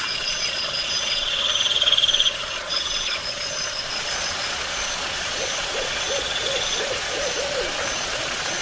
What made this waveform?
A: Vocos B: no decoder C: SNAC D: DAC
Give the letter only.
A